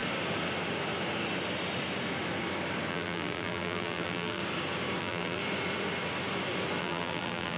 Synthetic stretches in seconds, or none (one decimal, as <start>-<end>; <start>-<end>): 2.9-4.4; 5.0-5.4; 6.8-7.6